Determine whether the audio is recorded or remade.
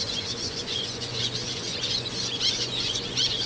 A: remade